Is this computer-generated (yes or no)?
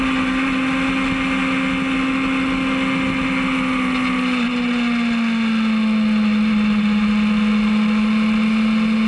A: no